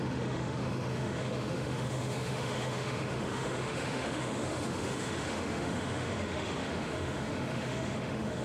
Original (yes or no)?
no